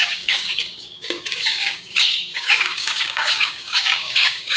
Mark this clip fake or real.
fake